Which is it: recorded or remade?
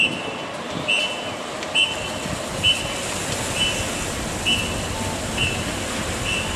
recorded